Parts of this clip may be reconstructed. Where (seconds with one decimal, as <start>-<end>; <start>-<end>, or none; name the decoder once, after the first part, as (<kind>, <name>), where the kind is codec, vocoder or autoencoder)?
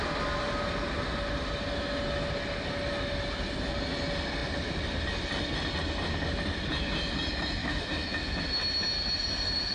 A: 7.6-8.4 (autoencoder, DAC-VAE)